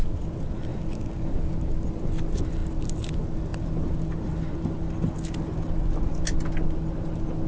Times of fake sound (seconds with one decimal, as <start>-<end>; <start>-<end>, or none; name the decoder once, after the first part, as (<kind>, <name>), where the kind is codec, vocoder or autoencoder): none